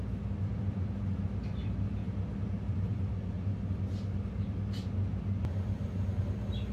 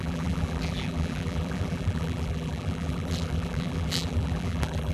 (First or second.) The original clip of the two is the first